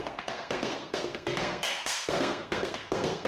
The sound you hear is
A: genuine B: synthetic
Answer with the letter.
B